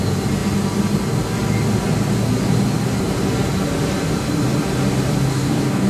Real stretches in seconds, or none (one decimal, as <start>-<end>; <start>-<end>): 0.0-5.3